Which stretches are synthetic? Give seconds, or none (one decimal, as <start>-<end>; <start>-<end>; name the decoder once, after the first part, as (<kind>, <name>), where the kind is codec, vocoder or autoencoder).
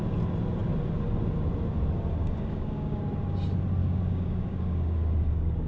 2.2-3.0 (codec, DAC); 3.8-5.7